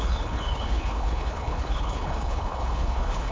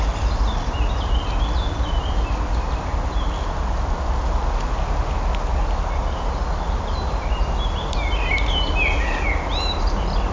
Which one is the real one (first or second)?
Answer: second